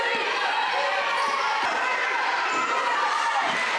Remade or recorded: recorded